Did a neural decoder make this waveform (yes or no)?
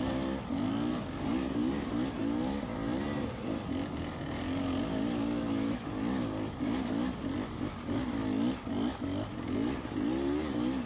no